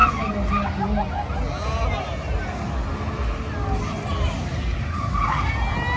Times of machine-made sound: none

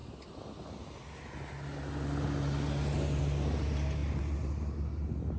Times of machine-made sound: none

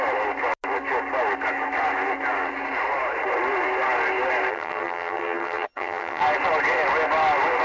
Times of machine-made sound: 4.5-6.2 (vocoder, HiFi-GAN)

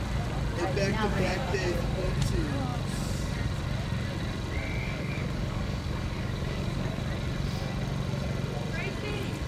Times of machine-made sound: 1.1-2.0 (codec, DAC); 4.8-7.0

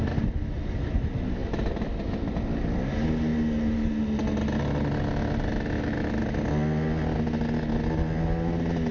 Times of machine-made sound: none

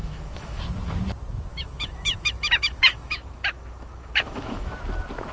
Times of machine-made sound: 0.0-0.6 (autoencoder, DAC-VAE); 1.5-4.7

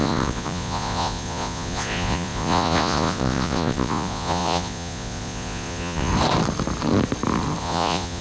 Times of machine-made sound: 0.0-6.1 (vocoder, Vocos); 7.6-8.2